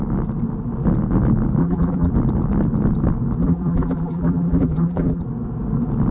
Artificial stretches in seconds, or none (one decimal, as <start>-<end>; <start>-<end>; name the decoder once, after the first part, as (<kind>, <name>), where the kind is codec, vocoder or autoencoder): 1.6-2.1 (vocoder, BigVGAN v2); 3.4-5.2